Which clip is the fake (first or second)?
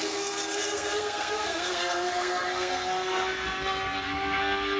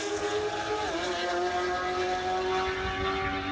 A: first